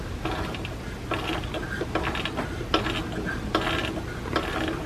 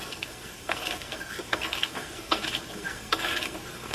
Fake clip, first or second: second